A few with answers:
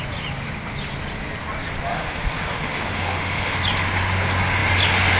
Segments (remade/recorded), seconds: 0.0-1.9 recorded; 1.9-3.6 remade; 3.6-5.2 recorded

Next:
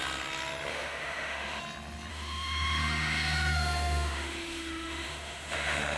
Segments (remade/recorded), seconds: 0.0-0.7 recorded; 0.7-1.6 remade; 1.6-2.1 recorded; 2.1-6.0 remade

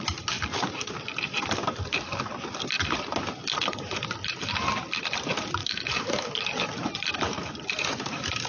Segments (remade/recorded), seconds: 0.0-5.6 recorded; 5.6-6.3 remade; 6.3-8.5 recorded